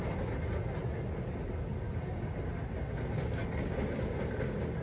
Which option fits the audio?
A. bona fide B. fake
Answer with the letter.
A